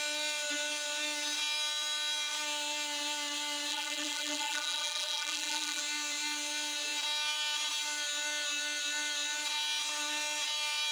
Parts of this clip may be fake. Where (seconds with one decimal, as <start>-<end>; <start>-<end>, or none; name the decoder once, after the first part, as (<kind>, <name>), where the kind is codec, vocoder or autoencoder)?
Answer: 3.7-5.8 (vocoder, BigVGAN v2)